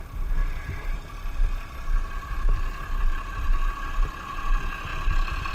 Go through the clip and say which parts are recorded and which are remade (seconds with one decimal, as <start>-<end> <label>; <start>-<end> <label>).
0.0-0.4 recorded; 0.4-3.7 remade; 3.7-5.5 recorded